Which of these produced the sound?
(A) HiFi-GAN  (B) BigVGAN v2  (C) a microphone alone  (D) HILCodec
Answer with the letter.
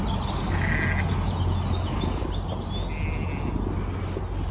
C